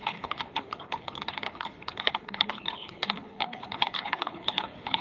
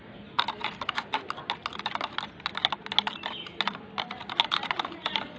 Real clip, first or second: second